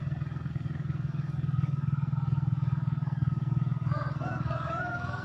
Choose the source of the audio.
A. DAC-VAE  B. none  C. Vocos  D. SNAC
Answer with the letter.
D